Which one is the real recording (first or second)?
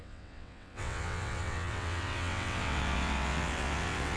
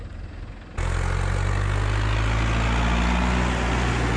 second